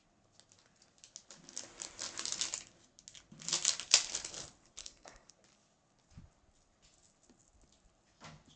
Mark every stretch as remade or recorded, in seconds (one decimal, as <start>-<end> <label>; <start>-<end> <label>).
0.0-4.8 recorded; 4.8-5.3 remade; 5.3-8.6 recorded